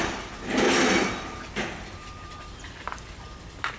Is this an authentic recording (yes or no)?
no